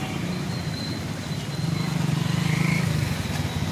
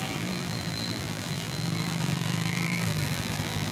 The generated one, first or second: second